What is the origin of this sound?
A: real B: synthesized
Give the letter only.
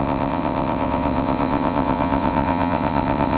B